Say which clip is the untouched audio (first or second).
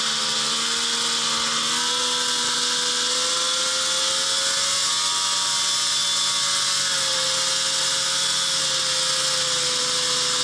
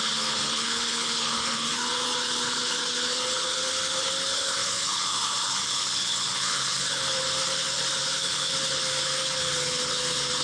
first